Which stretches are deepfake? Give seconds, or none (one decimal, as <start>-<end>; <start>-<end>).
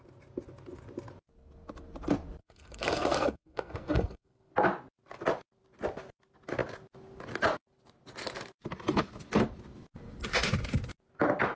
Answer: 2.4-4.5